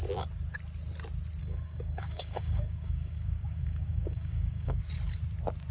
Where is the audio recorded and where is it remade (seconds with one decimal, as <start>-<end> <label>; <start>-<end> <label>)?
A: 0.0-1.4 recorded; 1.4-4.8 remade; 4.8-5.7 recorded